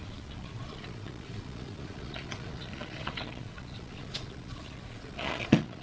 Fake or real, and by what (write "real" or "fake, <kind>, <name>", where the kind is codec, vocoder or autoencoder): fake, vocoder, Vocos